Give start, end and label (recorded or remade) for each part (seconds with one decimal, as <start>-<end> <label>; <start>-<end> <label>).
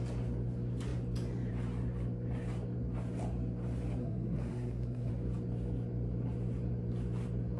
0.0-4.0 recorded; 4.0-5.1 remade; 5.1-7.6 recorded